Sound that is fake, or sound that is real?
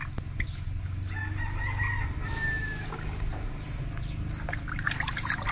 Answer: real